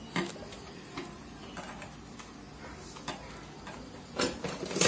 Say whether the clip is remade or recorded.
recorded